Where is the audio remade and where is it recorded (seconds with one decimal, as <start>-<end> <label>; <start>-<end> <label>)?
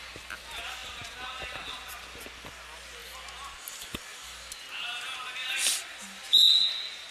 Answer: 0.0-0.8 recorded; 0.8-1.9 remade; 1.9-5.4 recorded; 5.4-6.5 remade; 6.5-7.1 recorded